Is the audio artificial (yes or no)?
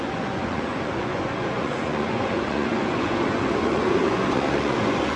yes